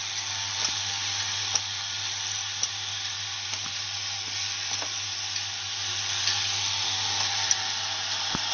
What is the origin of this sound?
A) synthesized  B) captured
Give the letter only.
B